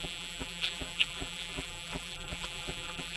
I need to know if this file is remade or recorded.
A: remade